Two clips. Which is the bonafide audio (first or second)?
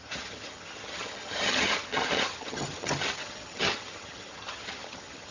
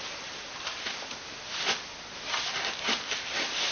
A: second